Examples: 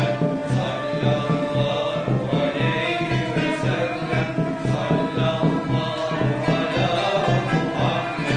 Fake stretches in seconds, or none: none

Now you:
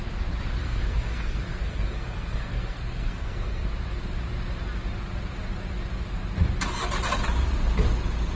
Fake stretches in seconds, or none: 0.6-3.7 (codec, SNAC)

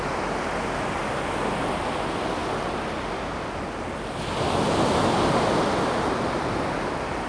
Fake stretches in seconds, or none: none